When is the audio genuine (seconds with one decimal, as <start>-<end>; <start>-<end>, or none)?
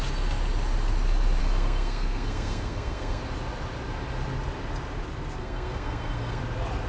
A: 0.0-1.4; 3.2-5.4; 6.4-6.9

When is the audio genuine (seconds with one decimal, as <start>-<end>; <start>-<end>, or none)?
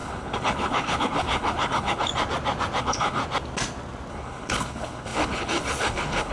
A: 2.1-2.8; 3.2-4.1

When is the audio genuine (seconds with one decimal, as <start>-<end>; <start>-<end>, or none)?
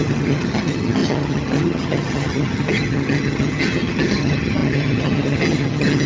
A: none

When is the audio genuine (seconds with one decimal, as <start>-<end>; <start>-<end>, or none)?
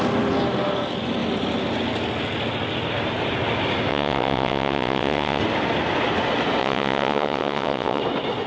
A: 0.0-3.9; 5.4-6.6; 8.0-8.5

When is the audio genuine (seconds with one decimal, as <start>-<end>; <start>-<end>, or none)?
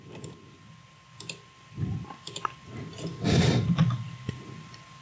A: 0.0-3.1; 3.8-5.0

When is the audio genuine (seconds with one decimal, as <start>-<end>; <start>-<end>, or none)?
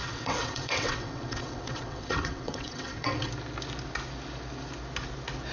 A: 3.3-5.5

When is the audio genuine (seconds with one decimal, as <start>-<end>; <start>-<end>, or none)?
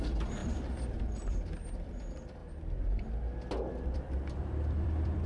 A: 2.4-3.7